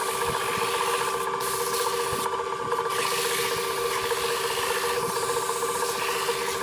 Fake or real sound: real